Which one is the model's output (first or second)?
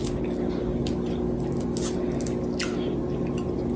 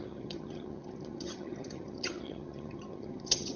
second